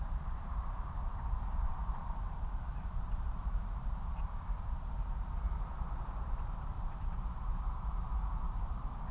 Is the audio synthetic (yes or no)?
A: yes